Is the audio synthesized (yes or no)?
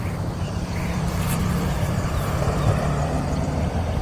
yes